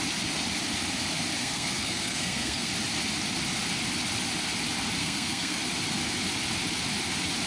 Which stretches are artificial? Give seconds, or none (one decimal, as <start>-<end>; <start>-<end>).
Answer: 1.4-2.7; 5.0-5.6